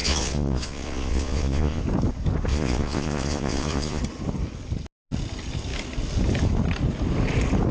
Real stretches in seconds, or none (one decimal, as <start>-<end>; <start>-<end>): 1.8-2.5; 4.0-7.7